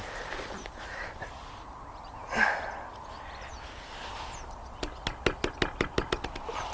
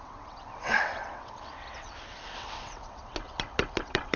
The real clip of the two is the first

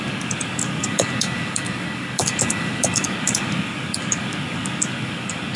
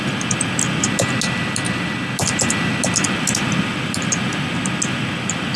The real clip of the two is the second